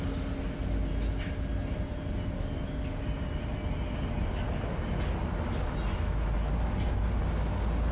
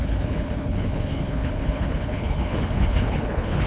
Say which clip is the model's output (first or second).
second